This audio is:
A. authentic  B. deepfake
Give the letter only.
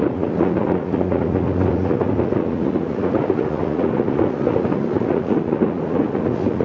B